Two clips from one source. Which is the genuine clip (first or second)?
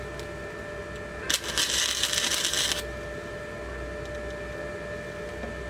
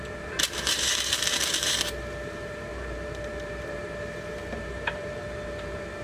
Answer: first